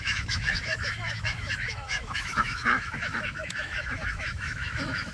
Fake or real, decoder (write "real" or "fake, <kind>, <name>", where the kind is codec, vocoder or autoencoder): fake, autoencoder, DAC-VAE